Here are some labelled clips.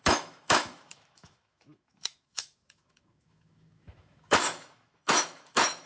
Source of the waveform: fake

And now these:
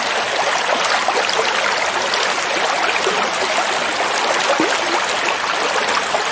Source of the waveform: real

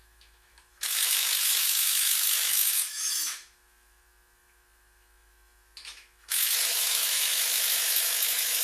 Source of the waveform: fake